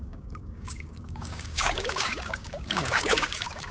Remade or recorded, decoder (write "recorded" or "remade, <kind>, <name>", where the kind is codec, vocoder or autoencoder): remade, codec, DAC